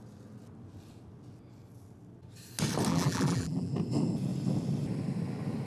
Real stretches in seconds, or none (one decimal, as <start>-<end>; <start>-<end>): 0.0-2.9; 3.7-5.7